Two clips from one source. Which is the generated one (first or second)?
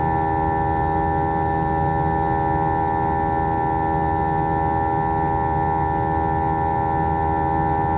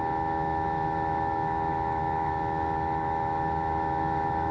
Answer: second